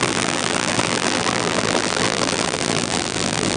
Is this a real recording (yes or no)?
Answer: no